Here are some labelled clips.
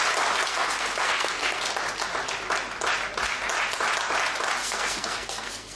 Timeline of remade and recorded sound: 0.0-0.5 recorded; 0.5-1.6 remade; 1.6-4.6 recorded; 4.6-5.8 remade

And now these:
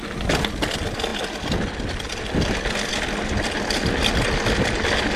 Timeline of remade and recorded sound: 0.0-5.2 recorded

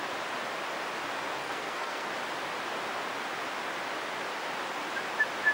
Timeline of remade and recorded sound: 0.0-1.4 recorded; 1.4-2.1 remade; 2.1-5.5 recorded